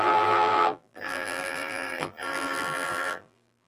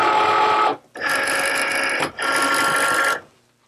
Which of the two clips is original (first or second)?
second